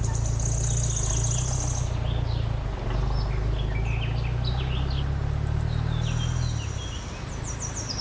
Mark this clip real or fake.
real